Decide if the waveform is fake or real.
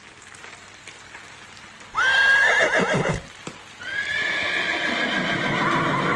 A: real